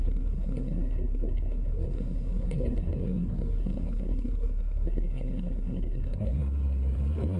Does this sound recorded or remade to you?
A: remade